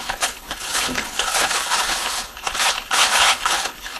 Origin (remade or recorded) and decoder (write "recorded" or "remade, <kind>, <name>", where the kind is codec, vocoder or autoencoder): remade, codec, HILCodec